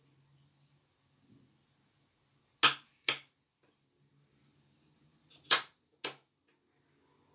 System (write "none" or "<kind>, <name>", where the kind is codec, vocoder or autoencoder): none